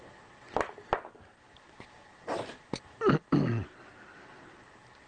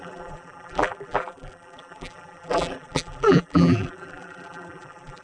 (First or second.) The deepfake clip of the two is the second